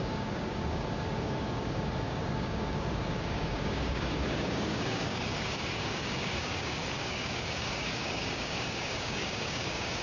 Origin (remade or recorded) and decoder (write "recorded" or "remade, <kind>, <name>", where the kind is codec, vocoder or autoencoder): remade, codec, DAC